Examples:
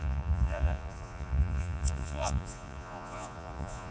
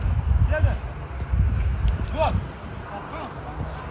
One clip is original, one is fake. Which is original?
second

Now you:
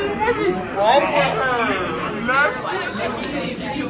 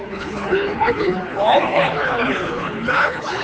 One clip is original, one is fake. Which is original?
first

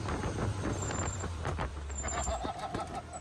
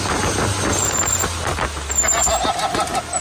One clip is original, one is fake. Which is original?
second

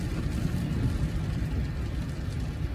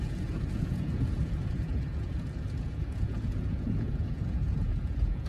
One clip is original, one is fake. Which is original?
first